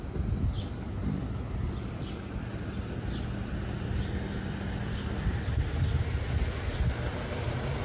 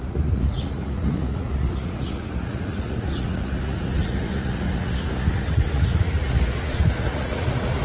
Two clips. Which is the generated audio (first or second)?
second